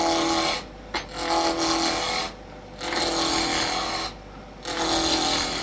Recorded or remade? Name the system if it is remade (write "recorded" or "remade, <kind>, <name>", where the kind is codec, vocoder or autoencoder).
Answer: recorded